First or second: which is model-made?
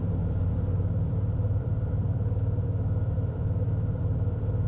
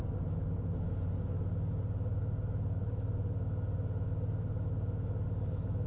first